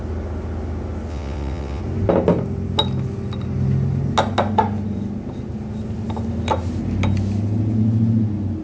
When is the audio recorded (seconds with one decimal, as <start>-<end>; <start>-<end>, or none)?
0.0-1.1; 1.8-8.6